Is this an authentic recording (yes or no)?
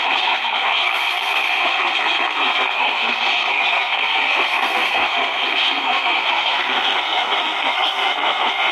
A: no